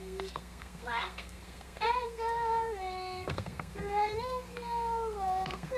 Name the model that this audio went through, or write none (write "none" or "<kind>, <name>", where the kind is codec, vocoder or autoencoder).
codec, SNAC